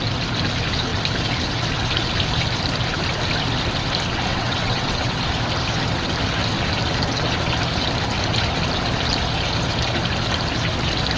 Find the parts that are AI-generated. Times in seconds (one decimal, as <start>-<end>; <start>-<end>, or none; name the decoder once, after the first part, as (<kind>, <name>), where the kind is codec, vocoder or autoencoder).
4.3-5.2 (vocoder, WaveNeXt)